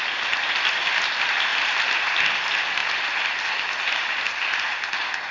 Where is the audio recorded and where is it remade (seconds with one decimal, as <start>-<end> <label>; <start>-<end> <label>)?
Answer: 0.0-5.3 recorded